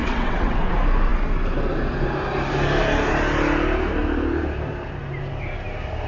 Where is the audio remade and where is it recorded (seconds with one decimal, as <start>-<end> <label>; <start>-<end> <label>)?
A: 0.0-0.7 remade; 0.7-6.1 recorded